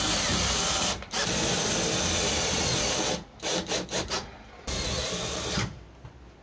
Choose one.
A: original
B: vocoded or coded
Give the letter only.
A